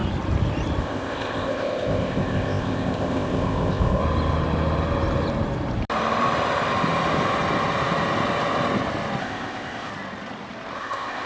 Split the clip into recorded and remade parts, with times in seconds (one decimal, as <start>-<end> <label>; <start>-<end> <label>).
0.0-0.8 recorded; 0.8-4.0 remade; 4.0-9.2 recorded; 9.2-9.9 remade; 9.9-10.8 recorded; 10.8-11.3 remade